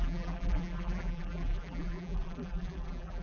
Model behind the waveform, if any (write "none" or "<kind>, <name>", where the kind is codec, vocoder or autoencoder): vocoder, BigVGAN v2